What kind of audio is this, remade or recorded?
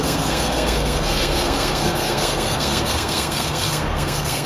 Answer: remade